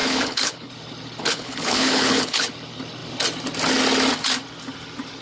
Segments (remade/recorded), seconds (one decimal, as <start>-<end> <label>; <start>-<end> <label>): 0.0-0.7 remade; 0.7-1.2 recorded; 1.2-2.5 remade; 2.5-5.2 recorded